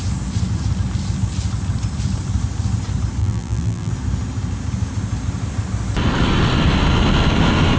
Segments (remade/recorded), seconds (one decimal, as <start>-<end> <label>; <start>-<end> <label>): 0.0-3.2 recorded; 3.2-3.9 remade; 3.9-7.8 recorded